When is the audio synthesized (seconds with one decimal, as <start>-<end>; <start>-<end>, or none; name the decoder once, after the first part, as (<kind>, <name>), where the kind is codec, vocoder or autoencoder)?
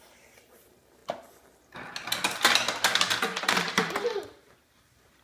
0.0-1.0 (vocoder, BigVGAN v2); 3.4-5.2